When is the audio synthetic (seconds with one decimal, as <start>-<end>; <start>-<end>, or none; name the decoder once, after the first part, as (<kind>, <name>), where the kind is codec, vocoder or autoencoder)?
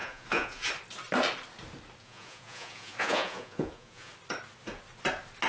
0.0-0.7 (vocoder, Vocos); 2.0-4.1